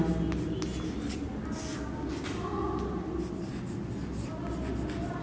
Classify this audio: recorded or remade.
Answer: recorded